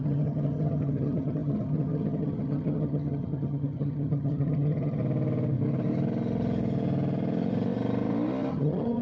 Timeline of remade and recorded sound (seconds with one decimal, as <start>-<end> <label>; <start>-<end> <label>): 0.0-5.0 remade; 5.0-8.5 recorded; 8.5-9.0 remade